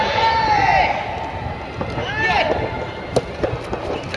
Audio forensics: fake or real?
real